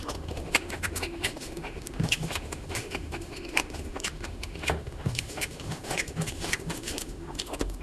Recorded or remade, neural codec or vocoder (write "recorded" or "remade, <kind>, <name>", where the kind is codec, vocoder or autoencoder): remade, autoencoder, DAC-VAE